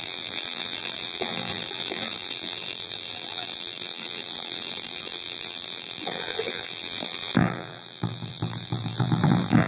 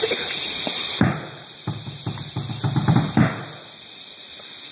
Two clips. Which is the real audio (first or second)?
second